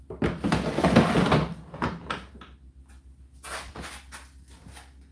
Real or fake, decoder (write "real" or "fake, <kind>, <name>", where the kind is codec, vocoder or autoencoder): real